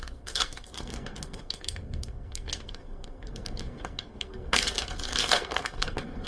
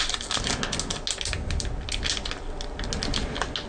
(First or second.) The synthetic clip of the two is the first